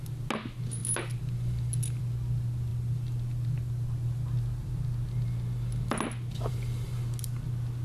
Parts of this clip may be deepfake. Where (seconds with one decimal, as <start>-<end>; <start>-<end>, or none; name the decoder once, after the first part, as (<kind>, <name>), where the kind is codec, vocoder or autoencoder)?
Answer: none